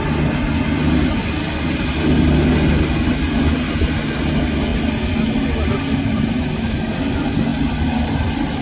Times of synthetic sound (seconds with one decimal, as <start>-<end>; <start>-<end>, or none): none